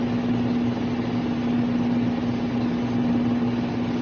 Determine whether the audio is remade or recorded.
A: recorded